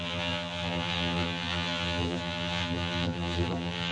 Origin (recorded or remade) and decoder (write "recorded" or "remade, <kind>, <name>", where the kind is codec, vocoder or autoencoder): remade, vocoder, BigVGAN v2